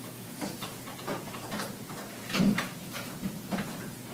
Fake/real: fake